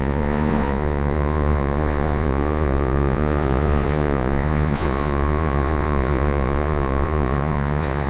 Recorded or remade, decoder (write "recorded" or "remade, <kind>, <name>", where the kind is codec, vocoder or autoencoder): remade, vocoder, Vocos